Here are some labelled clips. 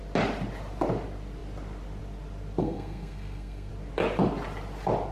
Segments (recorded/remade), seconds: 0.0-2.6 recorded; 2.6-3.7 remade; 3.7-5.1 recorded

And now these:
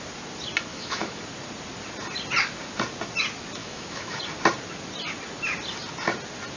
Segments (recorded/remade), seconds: 0.0-0.7 recorded; 0.7-1.2 remade; 1.2-3.6 recorded; 3.6-4.2 remade; 4.2-6.6 recorded